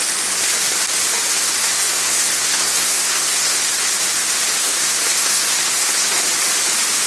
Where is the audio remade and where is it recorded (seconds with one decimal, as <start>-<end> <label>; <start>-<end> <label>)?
0.0-1.6 recorded; 1.6-3.7 remade; 3.7-4.6 recorded; 4.6-6.2 remade; 6.2-7.1 recorded